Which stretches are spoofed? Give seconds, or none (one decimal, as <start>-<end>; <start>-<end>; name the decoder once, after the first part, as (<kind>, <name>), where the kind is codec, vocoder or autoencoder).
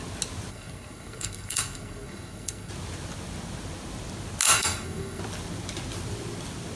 0.5-2.7 (codec, SNAC); 4.4-5.2